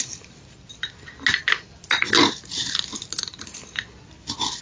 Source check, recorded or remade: recorded